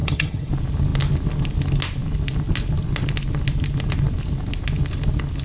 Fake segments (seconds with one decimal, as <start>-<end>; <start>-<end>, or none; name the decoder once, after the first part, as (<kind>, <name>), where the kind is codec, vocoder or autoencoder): 0.0-0.5 (vocoder, HiFi-GAN)